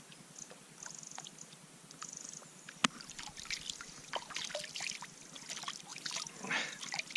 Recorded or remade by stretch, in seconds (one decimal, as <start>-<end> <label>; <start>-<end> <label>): 0.0-7.2 recorded